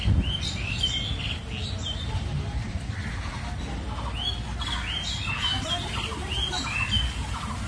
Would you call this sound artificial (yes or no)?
no